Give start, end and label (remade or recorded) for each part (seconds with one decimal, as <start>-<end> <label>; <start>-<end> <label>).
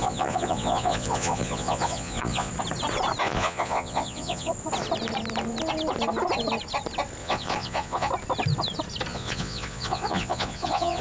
0.0-2.5 remade; 2.5-3.2 recorded; 3.2-4.5 remade; 4.5-7.2 recorded; 7.2-8.1 remade; 8.1-9.1 recorded; 9.1-11.0 remade